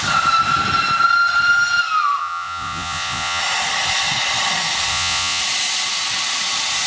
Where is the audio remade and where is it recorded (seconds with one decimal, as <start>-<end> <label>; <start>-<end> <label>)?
0.0-2.2 recorded; 2.2-3.4 remade; 3.4-4.9 recorded; 4.9-5.4 remade; 5.4-6.9 recorded